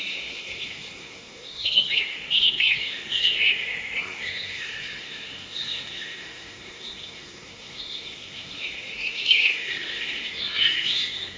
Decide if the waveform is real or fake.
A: fake